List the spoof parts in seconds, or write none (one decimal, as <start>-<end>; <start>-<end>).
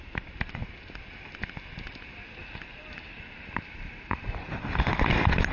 2.4-4.6